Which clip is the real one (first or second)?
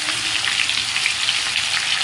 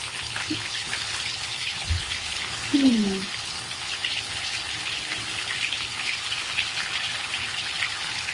first